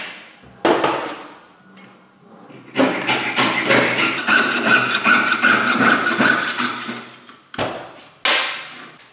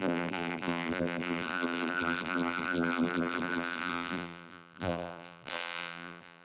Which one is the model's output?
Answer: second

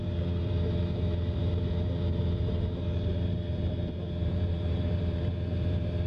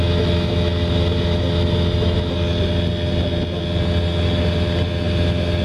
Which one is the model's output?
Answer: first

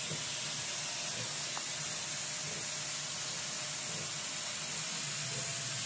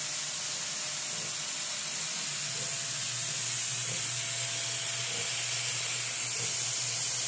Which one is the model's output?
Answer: second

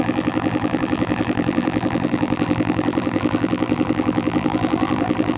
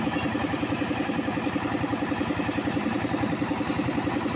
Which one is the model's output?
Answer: first